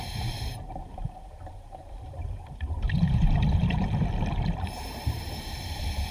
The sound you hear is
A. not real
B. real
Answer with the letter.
A